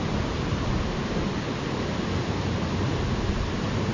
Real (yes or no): yes